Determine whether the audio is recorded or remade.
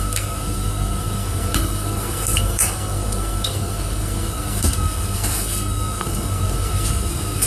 remade